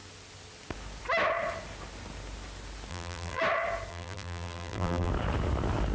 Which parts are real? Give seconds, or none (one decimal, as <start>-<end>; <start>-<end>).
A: 0.0-2.9; 3.4-3.9; 5.1-5.9